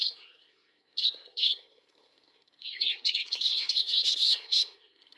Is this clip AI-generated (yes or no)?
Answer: yes